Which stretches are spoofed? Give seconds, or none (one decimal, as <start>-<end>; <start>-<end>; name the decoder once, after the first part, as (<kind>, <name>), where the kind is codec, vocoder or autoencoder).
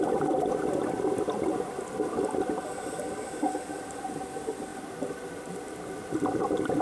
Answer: none